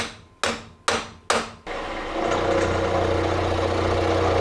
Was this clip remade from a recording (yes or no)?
no